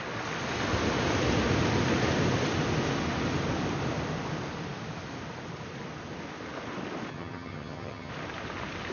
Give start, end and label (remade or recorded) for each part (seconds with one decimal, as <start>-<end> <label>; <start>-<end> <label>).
0.0-7.1 recorded; 7.1-8.1 remade; 8.1-8.9 recorded